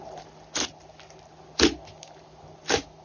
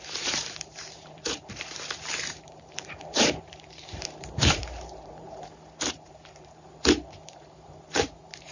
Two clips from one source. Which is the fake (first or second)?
second